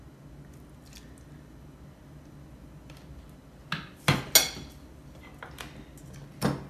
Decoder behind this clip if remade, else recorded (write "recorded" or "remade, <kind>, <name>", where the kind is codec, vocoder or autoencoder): recorded